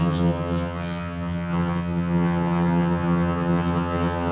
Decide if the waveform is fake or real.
fake